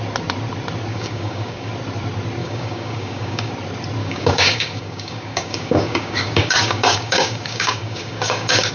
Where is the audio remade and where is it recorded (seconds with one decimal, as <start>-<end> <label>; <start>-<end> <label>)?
0.0-0.9 recorded; 0.9-1.7 remade; 1.7-2.4 recorded; 2.4-3.5 remade; 3.5-4.0 recorded; 4.0-8.7 remade